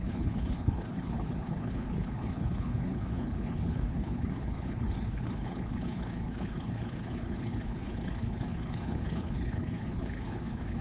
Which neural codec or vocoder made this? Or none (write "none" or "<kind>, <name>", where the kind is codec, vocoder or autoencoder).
codec, HILCodec